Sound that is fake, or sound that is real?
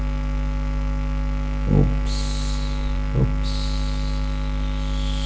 real